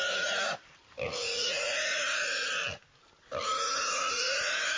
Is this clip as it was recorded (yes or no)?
yes